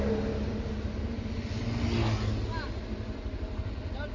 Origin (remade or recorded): recorded